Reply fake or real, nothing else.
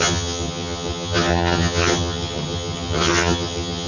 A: fake